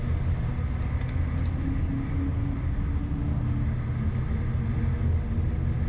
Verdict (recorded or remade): recorded